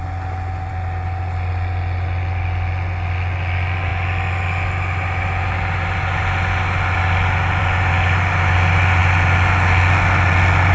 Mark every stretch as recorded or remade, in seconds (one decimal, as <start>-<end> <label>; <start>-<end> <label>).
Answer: 0.0-10.7 recorded